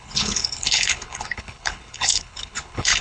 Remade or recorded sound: remade